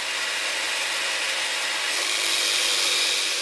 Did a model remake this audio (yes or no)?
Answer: no